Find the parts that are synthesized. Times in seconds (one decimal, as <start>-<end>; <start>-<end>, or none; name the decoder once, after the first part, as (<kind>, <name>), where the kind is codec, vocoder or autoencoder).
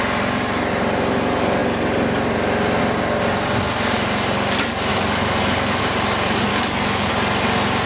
4.9-5.8 (codec, DAC); 6.5-7.1